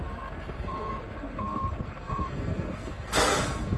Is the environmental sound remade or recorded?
remade